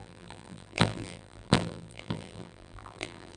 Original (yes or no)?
no